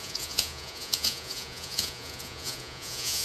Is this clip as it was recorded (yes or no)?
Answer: no